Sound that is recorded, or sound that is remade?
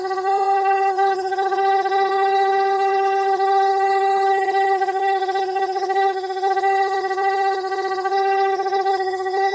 remade